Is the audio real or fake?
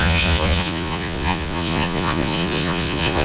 fake